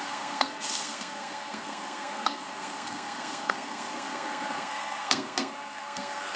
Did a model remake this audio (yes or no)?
yes